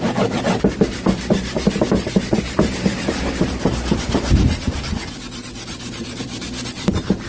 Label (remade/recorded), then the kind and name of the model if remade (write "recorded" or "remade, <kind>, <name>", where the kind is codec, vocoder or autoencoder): remade, vocoder, BigVGAN v2